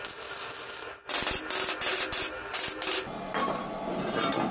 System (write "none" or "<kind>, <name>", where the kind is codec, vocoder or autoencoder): none